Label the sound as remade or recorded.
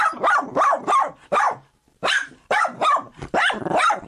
remade